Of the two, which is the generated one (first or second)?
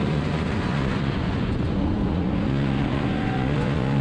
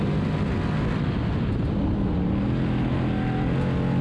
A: first